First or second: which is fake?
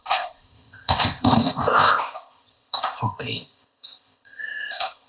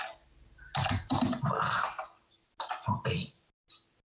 first